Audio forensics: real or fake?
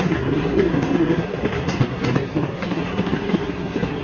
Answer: fake